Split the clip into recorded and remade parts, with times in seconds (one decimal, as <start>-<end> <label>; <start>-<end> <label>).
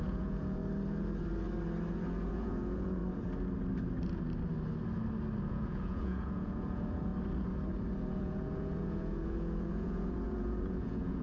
0.0-0.6 remade; 0.6-2.3 recorded; 2.3-3.0 remade; 3.0-5.4 recorded; 5.4-7.1 remade; 7.1-8.0 recorded; 8.0-11.2 remade